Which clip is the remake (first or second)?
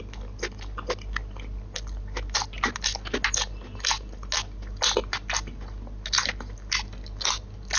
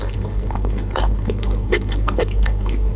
second